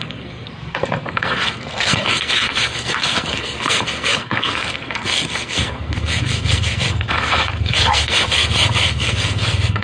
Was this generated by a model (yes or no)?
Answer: yes